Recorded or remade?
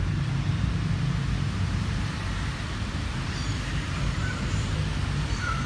remade